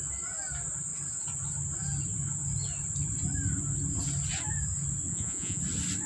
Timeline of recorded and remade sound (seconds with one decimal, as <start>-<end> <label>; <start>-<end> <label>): 0.0-5.1 recorded; 5.1-5.6 remade; 5.6-6.1 recorded